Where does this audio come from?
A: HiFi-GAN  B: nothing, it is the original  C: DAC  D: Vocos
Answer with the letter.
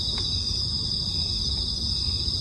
B